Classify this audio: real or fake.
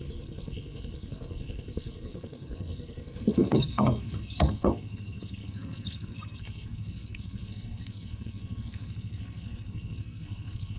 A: fake